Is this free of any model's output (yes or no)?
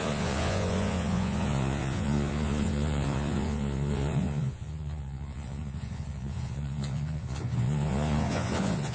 no